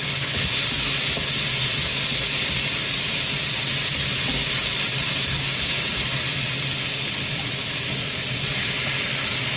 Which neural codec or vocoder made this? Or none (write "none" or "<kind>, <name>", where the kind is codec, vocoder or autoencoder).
none